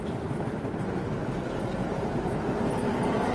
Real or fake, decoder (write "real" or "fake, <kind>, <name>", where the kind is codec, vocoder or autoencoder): real